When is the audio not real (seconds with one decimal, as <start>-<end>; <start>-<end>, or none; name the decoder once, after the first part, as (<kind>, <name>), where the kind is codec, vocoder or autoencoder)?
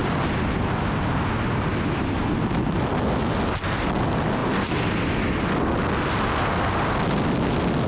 none